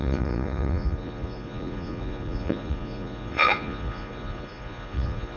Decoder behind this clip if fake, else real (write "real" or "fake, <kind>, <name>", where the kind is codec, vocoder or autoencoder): fake, vocoder, Vocos